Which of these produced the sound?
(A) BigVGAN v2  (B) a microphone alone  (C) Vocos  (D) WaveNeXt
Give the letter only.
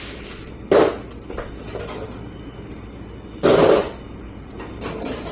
A